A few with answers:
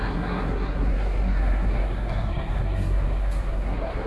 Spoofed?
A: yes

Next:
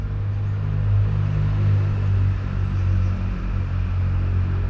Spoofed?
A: no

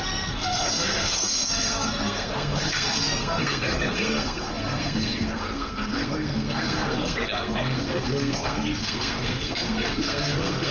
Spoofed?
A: yes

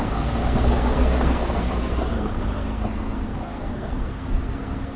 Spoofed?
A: yes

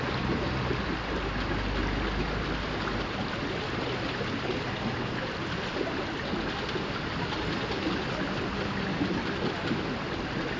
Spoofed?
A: no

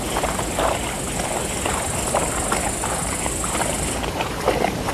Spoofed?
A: no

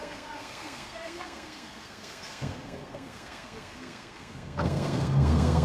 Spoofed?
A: yes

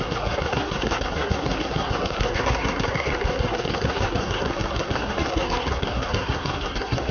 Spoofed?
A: yes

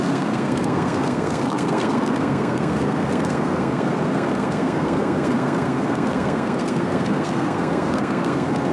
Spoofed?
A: yes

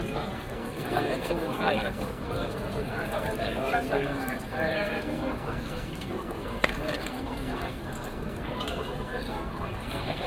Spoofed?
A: yes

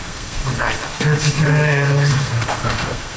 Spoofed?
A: yes